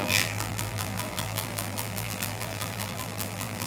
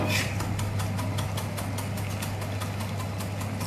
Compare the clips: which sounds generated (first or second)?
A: first